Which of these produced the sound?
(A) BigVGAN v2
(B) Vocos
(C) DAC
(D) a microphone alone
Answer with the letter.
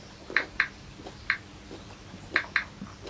D